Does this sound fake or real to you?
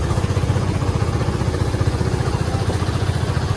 fake